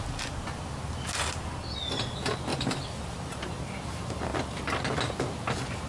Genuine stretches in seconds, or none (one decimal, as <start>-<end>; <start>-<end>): 0.0-2.5; 3.4-5.9